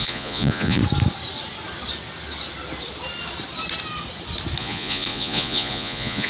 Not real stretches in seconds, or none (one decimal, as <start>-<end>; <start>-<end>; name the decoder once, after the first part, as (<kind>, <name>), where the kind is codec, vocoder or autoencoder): 0.0-0.8 (vocoder, Vocos); 4.6-6.3